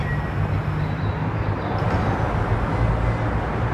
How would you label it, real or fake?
real